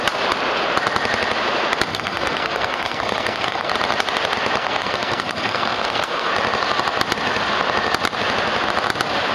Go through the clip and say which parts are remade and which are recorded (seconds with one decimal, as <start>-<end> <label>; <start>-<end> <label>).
0.0-1.9 recorded; 1.9-3.7 remade; 3.7-4.6 recorded; 4.6-6.3 remade; 6.3-9.3 recorded